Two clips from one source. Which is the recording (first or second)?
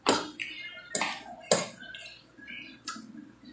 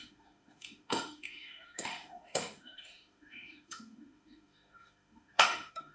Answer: first